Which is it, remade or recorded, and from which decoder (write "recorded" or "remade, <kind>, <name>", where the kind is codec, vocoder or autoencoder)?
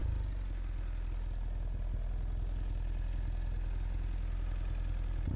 recorded